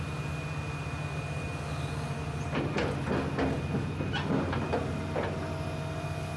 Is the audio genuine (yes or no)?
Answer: yes